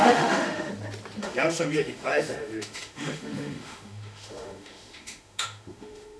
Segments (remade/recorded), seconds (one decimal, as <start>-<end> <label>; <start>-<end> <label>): 0.0-0.7 remade; 0.7-1.2 recorded; 1.2-6.2 remade